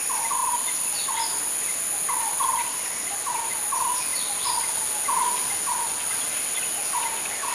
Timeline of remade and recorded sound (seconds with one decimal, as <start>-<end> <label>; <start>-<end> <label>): 0.0-0.4 recorded; 0.4-1.1 remade; 1.1-2.3 recorded; 2.3-3.1 remade; 3.1-4.1 recorded; 4.1-4.7 remade; 4.7-7.5 recorded